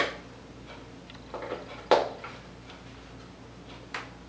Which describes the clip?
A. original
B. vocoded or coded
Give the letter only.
A